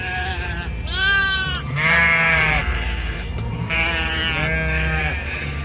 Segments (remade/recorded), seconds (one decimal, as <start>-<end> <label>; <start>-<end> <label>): 0.0-4.2 remade; 4.2-5.0 recorded; 5.0-5.6 remade